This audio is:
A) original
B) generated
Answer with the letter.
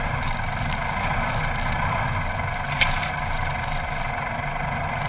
A